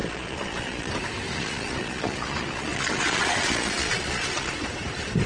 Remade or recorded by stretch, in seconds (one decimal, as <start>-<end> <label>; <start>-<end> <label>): 0.0-0.9 remade; 0.9-1.3 recorded; 1.3-4.5 remade; 4.5-5.3 recorded

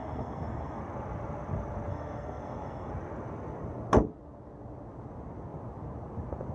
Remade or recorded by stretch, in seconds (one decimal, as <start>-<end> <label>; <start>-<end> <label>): 0.0-0.8 remade; 0.8-1.9 recorded; 1.9-2.9 remade; 2.9-6.5 recorded

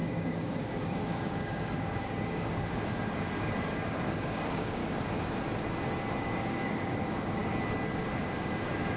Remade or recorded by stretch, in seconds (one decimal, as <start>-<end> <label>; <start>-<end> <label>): 0.0-4.8 remade; 4.8-6.2 recorded; 6.2-7.4 remade; 7.4-8.2 recorded; 8.2-9.0 remade

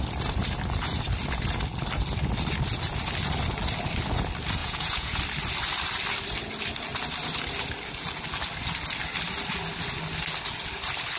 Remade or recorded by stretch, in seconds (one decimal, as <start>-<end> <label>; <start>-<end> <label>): 0.0-4.6 recorded; 4.6-5.2 remade; 5.2-11.2 recorded

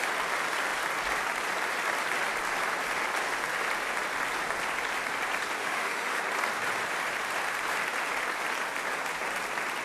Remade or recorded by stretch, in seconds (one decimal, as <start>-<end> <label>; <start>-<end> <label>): 0.0-5.6 recorded; 5.6-6.2 remade; 6.2-9.8 recorded

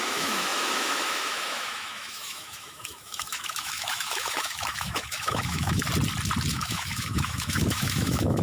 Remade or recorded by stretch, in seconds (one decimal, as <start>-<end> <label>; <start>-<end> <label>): 0.0-5.8 remade; 5.8-6.5 recorded; 6.5-8.4 remade

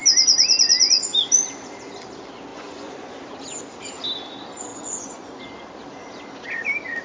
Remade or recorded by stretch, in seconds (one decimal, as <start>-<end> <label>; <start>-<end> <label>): 0.0-2.5 recorded; 2.5-3.2 remade; 3.2-4.7 recorded; 4.7-5.4 remade; 5.4-7.0 recorded

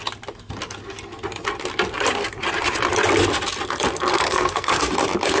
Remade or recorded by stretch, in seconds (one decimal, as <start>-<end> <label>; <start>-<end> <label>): 0.0-4.1 recorded; 4.1-4.9 remade; 4.9-5.4 recorded